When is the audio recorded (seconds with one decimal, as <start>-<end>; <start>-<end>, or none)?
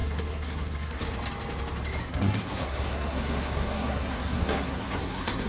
1.0-2.0